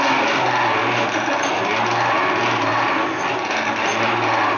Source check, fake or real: real